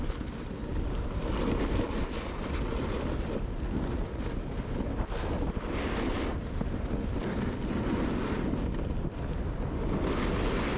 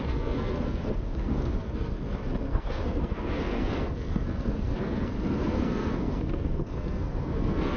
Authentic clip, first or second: first